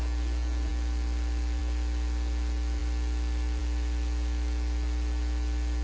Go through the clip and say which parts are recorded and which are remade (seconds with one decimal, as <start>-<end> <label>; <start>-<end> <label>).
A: 0.0-5.8 recorded